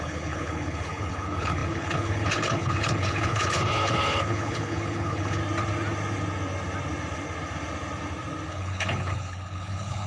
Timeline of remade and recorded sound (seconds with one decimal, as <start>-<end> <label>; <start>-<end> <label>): 0.0-5.4 remade; 5.4-8.5 recorded; 8.5-10.1 remade